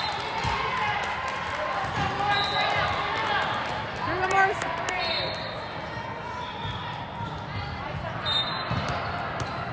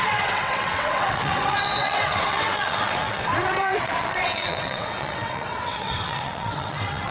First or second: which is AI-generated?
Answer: second